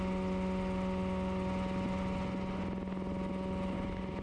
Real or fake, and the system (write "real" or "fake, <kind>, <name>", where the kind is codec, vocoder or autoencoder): real